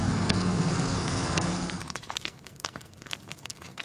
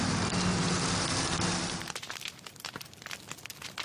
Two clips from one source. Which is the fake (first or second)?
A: first